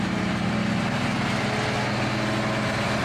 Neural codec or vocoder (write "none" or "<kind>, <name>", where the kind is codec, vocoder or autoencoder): none